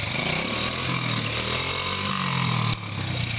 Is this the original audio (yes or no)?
yes